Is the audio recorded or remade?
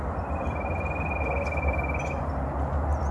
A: recorded